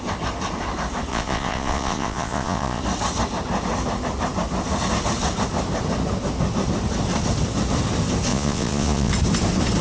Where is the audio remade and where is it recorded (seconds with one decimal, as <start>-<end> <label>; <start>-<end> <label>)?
0.0-1.1 recorded; 1.1-2.8 remade; 2.8-8.3 recorded; 8.3-9.1 remade; 9.1-9.8 recorded